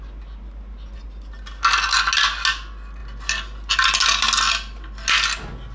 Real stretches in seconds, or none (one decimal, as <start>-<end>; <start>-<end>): 0.0-5.7